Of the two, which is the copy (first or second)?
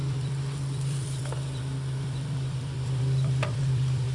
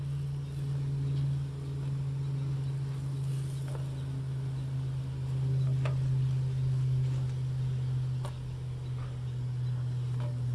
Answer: first